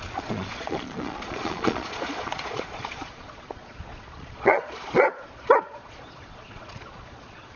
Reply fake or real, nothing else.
fake